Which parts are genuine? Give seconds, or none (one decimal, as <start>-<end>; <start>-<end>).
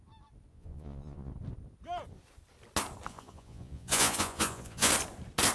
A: 0.0-0.5; 1.3-3.1; 4.9-5.5